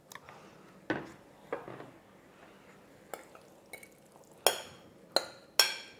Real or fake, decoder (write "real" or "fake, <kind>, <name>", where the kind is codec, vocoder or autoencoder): real